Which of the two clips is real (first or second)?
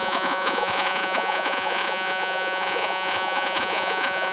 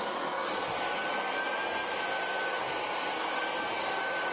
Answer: second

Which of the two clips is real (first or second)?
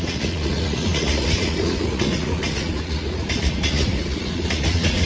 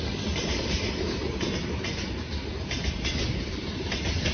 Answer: second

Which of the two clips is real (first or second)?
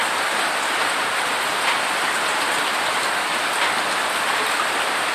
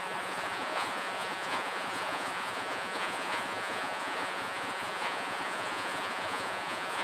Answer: first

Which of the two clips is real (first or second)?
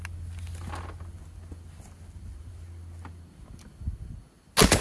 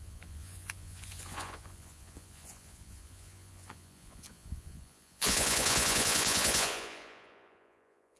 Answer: first